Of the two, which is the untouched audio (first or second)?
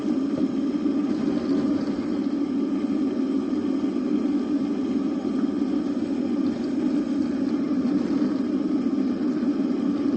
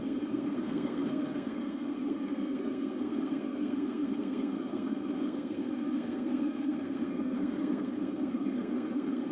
first